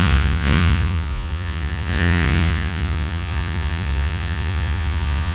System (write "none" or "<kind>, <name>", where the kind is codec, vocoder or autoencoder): vocoder, Vocos